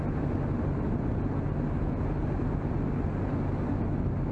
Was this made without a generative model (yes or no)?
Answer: yes